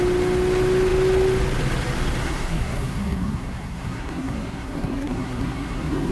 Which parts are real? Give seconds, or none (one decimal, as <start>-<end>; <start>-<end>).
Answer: 0.0-2.2